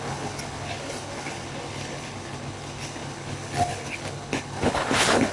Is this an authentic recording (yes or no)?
no